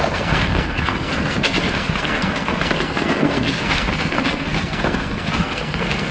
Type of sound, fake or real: fake